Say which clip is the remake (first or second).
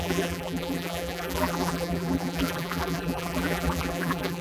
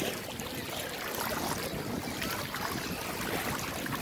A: first